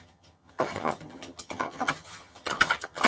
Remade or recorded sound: remade